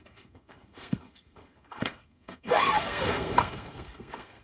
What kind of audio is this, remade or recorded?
remade